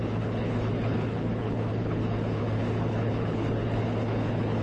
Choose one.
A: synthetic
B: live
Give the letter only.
A